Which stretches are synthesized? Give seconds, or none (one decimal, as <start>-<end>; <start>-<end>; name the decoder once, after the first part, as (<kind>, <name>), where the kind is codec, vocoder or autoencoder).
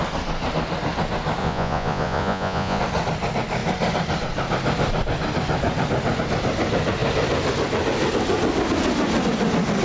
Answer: 1.4-2.8 (vocoder, Vocos)